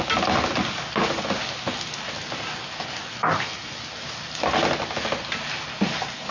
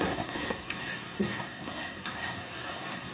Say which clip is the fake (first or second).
second